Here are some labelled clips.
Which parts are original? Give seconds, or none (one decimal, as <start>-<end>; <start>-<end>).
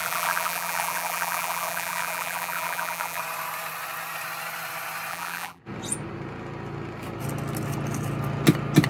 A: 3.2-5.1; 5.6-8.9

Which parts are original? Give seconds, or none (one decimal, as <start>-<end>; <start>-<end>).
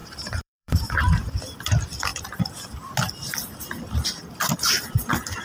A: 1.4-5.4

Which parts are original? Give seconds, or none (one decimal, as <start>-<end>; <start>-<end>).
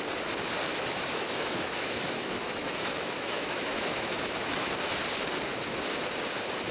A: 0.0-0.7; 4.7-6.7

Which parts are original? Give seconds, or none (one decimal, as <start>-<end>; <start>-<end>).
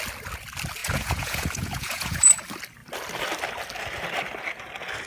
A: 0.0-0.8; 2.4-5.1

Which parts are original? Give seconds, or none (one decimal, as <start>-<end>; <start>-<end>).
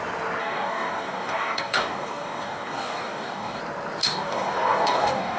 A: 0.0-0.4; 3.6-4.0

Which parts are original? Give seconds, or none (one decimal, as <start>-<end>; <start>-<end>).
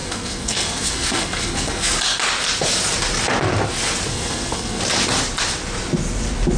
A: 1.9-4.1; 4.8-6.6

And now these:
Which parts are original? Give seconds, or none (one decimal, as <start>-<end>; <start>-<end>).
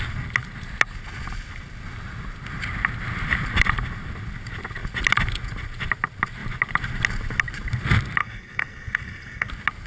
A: 0.0-8.2; 9.5-9.9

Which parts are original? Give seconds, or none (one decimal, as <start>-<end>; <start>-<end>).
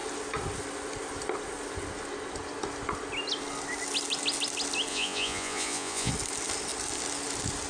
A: 0.0-4.9; 6.1-7.7